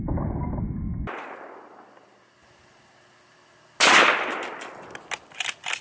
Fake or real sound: real